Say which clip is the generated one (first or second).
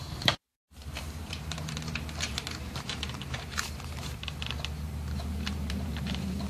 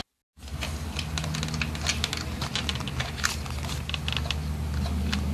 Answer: first